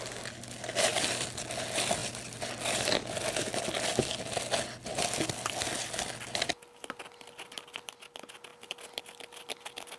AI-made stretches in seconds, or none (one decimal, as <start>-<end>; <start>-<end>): none